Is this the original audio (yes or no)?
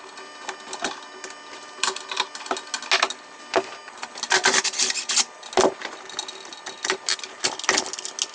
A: yes